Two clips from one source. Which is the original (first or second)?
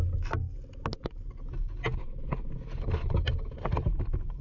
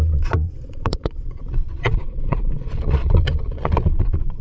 first